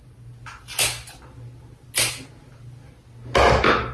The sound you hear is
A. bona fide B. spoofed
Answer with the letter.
A